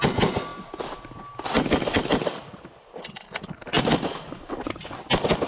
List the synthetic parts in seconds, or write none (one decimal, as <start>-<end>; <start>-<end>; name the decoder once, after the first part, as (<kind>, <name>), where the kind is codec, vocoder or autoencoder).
none